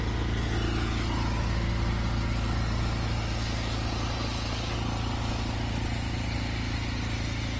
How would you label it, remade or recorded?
recorded